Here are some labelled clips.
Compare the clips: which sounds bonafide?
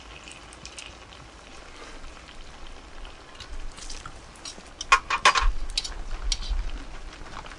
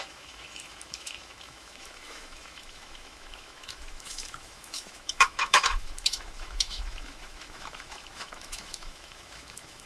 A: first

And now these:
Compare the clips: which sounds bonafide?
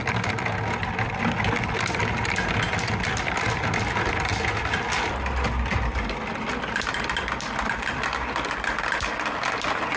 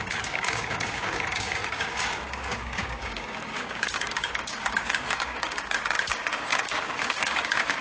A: first